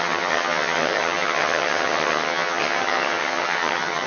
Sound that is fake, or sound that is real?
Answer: fake